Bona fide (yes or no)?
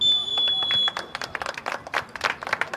yes